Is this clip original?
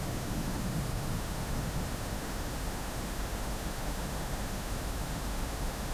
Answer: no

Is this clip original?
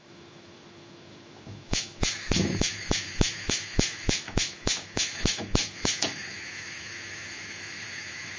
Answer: no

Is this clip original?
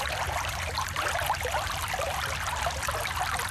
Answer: yes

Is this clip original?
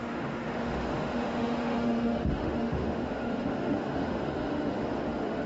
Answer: no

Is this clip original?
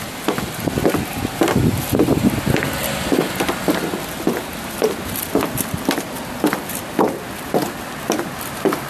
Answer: yes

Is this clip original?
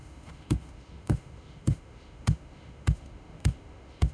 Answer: no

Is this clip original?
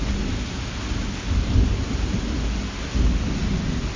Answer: yes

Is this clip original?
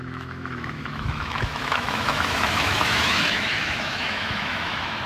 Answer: no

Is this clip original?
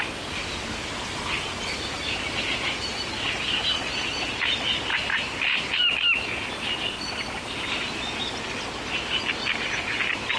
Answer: yes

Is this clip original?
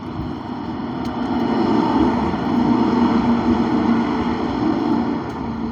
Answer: yes